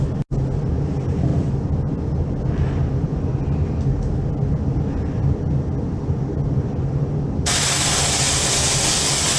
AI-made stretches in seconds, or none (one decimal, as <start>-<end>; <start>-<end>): none